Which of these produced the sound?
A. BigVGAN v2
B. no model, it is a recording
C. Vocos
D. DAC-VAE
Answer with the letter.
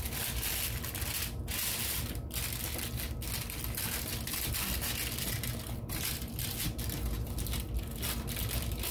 B